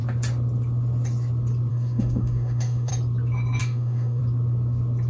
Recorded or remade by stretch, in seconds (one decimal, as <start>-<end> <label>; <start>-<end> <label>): 0.0-1.7 recorded; 1.7-2.9 remade; 2.9-3.6 recorded; 3.6-4.2 remade; 4.2-5.1 recorded